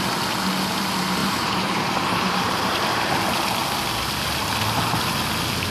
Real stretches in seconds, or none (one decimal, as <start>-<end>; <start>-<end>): 0.0-1.2; 3.0-5.7